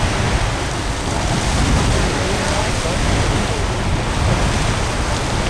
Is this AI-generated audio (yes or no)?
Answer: no